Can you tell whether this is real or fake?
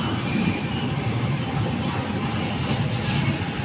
real